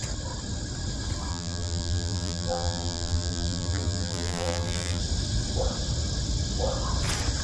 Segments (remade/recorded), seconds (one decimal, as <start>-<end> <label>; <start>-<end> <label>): 0.0-1.3 recorded; 1.3-5.0 remade; 5.0-7.4 recorded